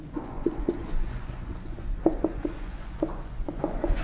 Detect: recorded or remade remade